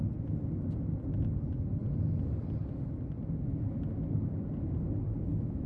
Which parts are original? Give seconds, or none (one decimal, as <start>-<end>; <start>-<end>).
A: 0.0-5.7